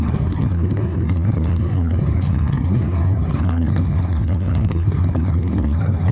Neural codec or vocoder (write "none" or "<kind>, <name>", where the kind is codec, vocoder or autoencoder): codec, SNAC